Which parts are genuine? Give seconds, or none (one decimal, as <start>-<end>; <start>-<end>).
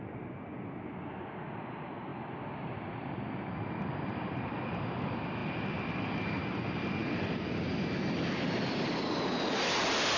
0.0-10.2